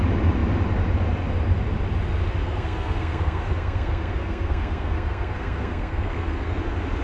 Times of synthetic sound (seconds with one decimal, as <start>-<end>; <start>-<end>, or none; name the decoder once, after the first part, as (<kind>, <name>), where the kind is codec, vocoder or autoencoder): 2.4-6.6 (codec, SNAC)